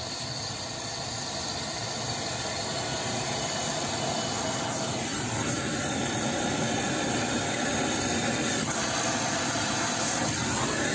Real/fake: fake